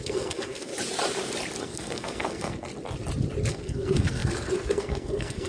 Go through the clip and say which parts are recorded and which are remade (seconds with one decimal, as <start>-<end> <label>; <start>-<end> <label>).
0.0-0.7 remade; 0.7-1.6 recorded; 1.6-2.7 remade; 2.7-3.5 recorded; 3.5-5.5 remade